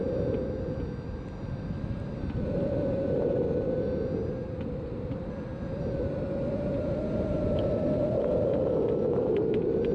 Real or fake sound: real